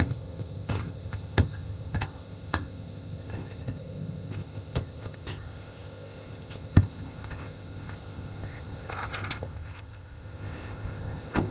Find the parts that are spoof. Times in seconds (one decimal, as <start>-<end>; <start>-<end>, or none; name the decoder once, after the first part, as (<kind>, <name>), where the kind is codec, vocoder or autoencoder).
0.0-11.5 (codec, ZipCodec)